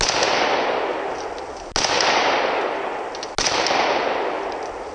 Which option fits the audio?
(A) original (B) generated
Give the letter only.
A